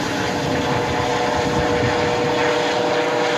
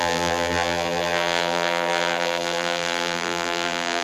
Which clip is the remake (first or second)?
second